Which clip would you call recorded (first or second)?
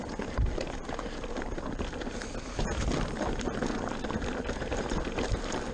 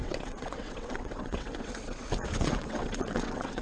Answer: first